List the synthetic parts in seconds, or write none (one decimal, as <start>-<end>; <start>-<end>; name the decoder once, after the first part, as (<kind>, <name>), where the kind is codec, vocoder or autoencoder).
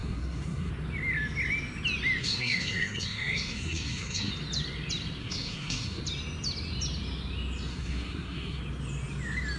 0.0-0.7 (codec, SNAC); 2.2-4.3; 5.2-6.0; 7.7-8.6